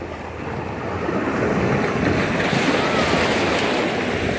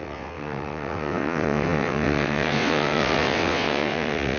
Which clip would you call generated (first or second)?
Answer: second